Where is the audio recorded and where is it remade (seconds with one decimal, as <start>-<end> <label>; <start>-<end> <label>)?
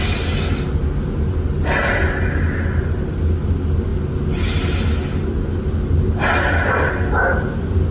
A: 0.0-7.9 recorded